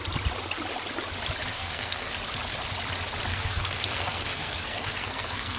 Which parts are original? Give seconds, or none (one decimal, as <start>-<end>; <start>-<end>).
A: 0.0-1.5; 2.1-3.3